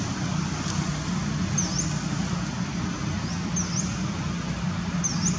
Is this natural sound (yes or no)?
yes